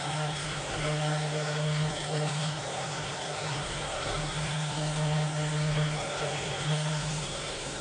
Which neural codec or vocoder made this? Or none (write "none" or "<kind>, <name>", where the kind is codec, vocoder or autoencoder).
codec, SNAC